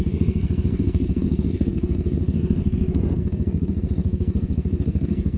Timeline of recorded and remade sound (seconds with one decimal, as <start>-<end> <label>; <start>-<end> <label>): 0.0-5.4 remade